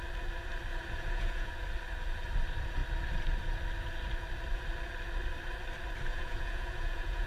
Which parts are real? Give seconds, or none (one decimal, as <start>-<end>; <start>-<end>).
0.0-0.7; 1.5-6.1